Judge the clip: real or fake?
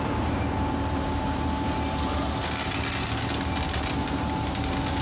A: real